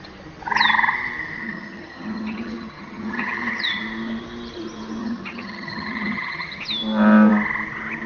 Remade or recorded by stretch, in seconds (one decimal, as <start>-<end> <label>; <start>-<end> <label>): 0.0-1.4 recorded; 1.4-3.8 remade; 3.8-5.0 recorded; 5.0-6.6 remade; 6.6-8.1 recorded